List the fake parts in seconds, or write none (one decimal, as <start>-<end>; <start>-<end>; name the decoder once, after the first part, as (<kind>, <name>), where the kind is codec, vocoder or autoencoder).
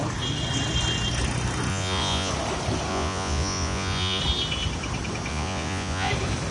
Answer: 1.7-2.3 (vocoder, Vocos); 2.9-4.2; 5.3-6.1